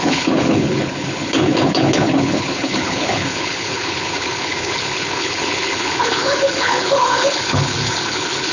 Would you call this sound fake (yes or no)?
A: yes